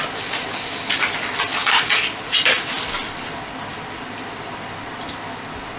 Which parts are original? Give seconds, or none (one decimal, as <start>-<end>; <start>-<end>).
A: 0.0-1.6; 4.8-5.8